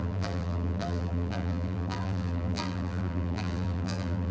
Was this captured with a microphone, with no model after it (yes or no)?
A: no